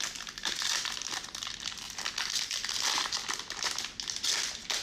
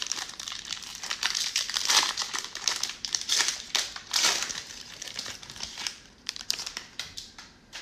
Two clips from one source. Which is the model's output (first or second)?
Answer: second